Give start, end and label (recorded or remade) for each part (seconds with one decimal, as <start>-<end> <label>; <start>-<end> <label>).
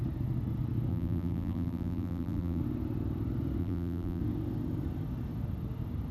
0.0-0.9 recorded; 0.9-2.6 remade; 2.6-3.6 recorded; 3.6-4.2 remade; 4.2-6.1 recorded